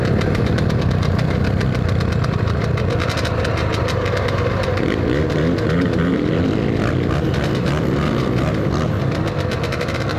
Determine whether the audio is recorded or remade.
recorded